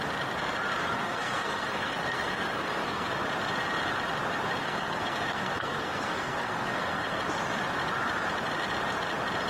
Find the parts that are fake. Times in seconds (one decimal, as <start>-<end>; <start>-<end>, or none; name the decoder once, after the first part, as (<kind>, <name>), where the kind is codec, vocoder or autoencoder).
0.8-3.1 (codec, SNAC); 4.6-7.2